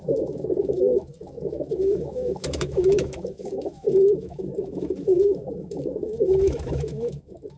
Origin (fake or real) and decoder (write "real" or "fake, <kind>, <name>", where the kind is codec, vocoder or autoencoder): fake, autoencoder, DAC-VAE